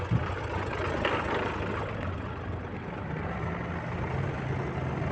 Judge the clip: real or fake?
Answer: real